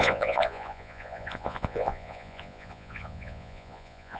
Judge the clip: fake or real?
fake